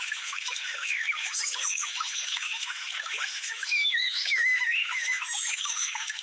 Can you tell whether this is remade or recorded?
remade